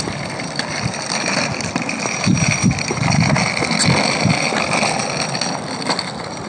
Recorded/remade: recorded